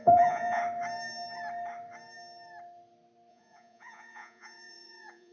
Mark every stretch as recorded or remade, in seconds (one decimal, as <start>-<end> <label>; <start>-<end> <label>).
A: 0.0-0.6 remade; 0.6-3.3 recorded; 3.3-5.3 remade